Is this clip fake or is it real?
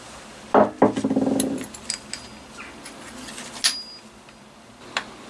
real